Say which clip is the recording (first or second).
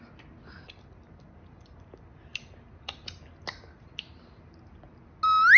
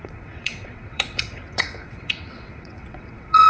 first